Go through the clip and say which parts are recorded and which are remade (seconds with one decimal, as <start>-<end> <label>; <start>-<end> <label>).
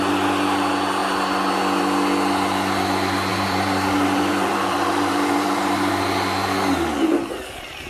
0.0-3.3 recorded; 3.3-5.9 remade; 5.9-7.9 recorded